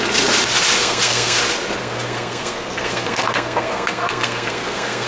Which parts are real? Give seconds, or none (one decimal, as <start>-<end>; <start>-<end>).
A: 0.0-0.8; 1.4-1.8